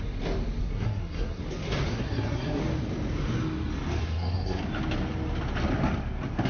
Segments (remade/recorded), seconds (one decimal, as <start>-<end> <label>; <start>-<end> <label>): 0.0-0.6 recorded; 0.6-1.4 remade; 1.4-1.9 recorded; 1.9-2.6 remade; 2.6-4.0 recorded; 4.0-4.6 remade; 4.6-6.5 recorded